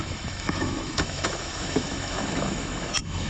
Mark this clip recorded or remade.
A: remade